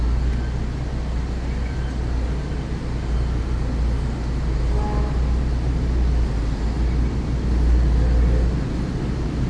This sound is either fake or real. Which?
real